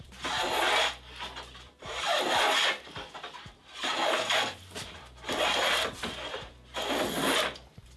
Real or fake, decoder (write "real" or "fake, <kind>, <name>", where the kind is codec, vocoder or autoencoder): fake, vocoder, BigVGAN v2